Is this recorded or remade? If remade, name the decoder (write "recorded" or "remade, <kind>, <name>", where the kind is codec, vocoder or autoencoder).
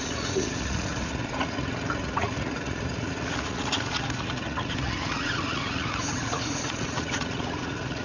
remade, vocoder, Vocos